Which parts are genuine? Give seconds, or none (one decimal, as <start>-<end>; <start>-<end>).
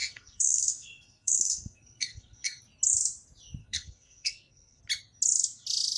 2.6-3.6; 4.8-6.0